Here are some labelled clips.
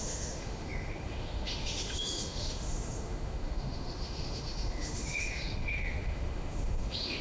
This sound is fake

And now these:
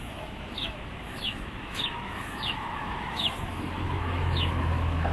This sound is fake